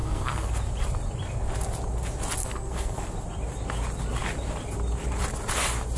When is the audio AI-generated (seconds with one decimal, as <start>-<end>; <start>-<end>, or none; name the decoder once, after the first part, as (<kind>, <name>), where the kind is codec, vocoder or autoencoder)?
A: 0.0-0.5 (codec, SNAC); 2.4-3.0